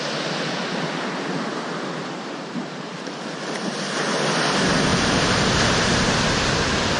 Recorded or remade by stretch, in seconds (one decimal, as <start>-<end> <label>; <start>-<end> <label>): 0.0-2.0 recorded; 2.0-3.0 remade; 3.0-4.9 recorded; 4.9-6.5 remade; 6.5-7.0 recorded